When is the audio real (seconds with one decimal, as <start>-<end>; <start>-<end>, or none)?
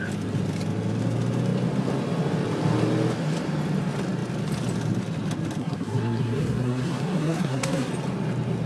0.0-5.6; 7.9-8.7